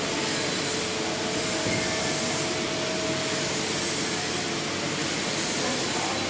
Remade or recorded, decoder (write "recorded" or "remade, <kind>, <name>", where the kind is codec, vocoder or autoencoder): recorded